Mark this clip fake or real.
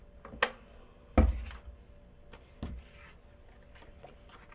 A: real